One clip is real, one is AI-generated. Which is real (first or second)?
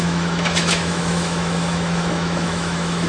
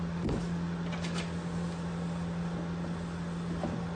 second